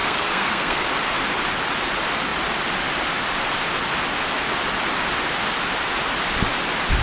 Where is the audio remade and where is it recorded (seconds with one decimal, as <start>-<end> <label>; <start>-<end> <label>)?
0.0-0.8 remade; 0.8-7.0 recorded

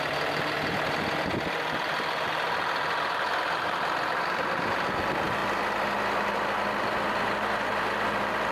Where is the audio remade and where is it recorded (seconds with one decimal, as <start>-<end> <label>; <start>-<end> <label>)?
0.0-8.5 recorded

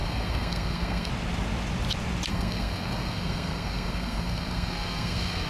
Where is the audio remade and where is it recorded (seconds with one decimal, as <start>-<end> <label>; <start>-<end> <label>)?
0.0-1.1 remade; 1.1-2.3 recorded; 2.3-5.5 remade

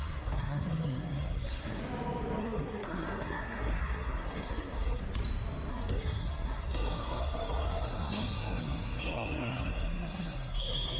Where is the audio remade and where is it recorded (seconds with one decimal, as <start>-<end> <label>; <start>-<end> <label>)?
0.0-1.8 remade; 1.8-2.4 recorded; 2.4-5.0 remade; 5.0-5.7 recorded; 5.7-11.0 remade

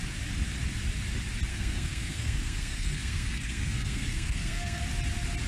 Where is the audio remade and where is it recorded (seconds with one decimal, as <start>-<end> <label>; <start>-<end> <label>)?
0.0-1.5 recorded; 1.5-4.8 remade; 4.8-5.5 recorded

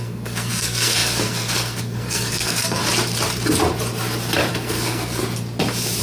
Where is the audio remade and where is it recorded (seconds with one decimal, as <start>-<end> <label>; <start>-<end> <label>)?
0.0-2.8 remade; 2.8-4.5 recorded; 4.5-5.2 remade; 5.2-6.0 recorded

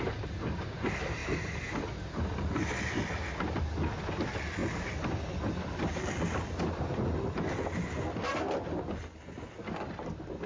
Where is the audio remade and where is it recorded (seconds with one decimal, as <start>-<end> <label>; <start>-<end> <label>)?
0.0-10.5 recorded